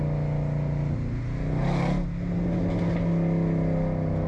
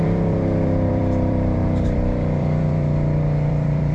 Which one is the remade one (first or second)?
second